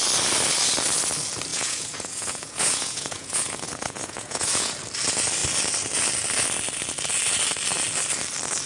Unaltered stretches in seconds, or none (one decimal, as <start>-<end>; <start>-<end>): 0.0-1.5; 4.7-8.7